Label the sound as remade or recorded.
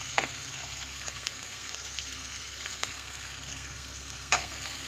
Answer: remade